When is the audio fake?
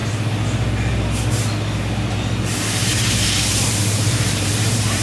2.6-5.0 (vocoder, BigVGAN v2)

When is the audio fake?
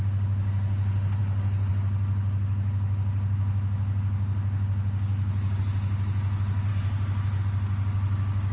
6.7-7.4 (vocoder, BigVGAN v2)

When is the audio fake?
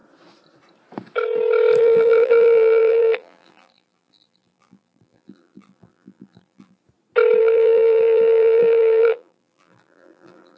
1.8-6.8 (vocoder, BigVGAN v2); 7.4-10.6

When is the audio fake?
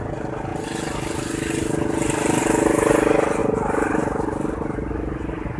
0.5-2.4 (vocoder, BigVGAN v2); 3.4-5.6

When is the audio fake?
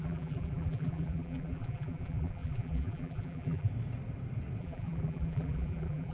0.0-3.7 (vocoder, BigVGAN v2); 4.6-6.1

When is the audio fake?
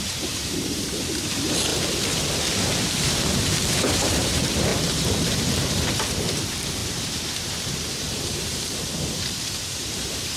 0.0-1.7 (vocoder, BigVGAN v2); 2.8-10.4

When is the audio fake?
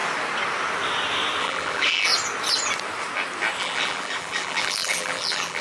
1.4-2.1 (vocoder, BigVGAN v2); 3.6-5.6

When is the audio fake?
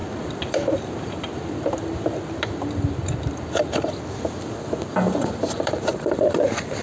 0.0-4.1 (vocoder, BigVGAN v2); 4.9-6.8